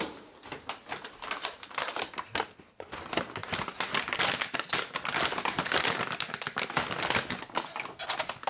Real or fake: real